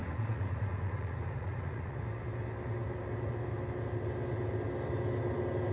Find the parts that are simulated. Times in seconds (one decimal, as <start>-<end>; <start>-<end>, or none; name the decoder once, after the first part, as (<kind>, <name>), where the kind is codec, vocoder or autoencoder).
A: 0.0-2.0 (vocoder, Vocos)